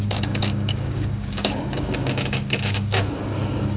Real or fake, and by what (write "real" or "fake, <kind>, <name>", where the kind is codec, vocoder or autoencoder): fake, codec, DAC